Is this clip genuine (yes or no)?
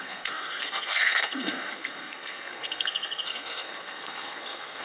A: no